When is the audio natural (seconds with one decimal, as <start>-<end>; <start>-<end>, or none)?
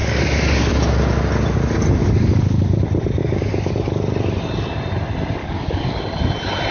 0.7-2.0; 2.8-3.2; 3.7-5.4; 6.0-6.7